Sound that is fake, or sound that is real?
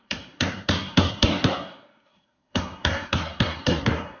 fake